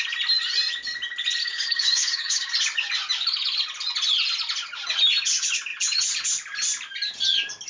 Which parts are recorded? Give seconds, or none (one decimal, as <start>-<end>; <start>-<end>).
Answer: 0.0-1.4; 2.5-7.7